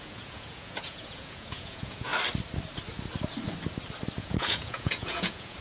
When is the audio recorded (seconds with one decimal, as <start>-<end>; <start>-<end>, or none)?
2.1-4.2